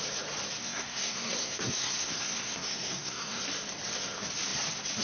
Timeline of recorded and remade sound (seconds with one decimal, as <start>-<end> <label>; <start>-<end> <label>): 0.0-0.6 recorded; 0.6-3.4 remade; 3.4-5.0 recorded